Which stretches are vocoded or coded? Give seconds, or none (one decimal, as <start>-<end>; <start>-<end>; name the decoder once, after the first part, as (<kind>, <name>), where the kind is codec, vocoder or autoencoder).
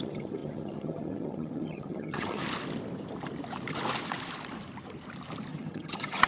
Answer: 0.0-2.4 (vocoder, HiFi-GAN); 5.5-6.3